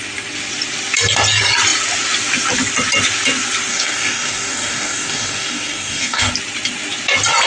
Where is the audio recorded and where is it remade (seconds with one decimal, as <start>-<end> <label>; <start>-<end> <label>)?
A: 0.0-3.7 recorded; 3.7-6.3 remade; 6.3-7.5 recorded